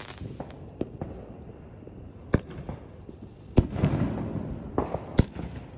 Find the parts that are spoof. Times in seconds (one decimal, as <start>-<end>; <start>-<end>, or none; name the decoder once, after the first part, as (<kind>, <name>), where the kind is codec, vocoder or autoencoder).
none